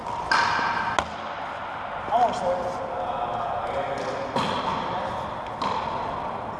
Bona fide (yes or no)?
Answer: yes